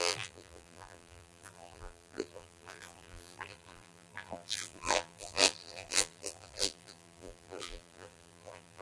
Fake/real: fake